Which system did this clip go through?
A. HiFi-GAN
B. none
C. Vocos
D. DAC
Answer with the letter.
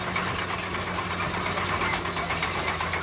B